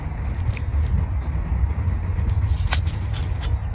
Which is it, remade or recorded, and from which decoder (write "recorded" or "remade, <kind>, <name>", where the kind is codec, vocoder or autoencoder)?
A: recorded